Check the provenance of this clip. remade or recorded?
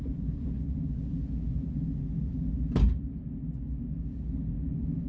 recorded